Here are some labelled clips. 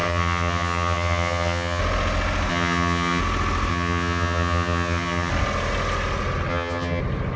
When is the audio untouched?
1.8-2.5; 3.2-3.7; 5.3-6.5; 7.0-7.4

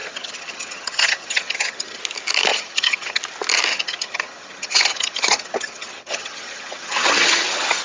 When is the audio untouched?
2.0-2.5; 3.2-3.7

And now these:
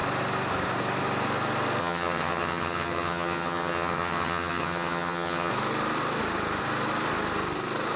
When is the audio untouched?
0.0-1.8; 5.5-8.0

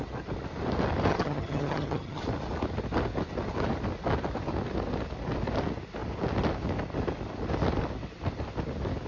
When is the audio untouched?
0.0-1.1; 2.2-9.1

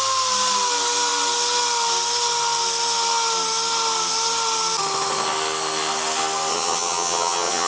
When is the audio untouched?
0.0-6.5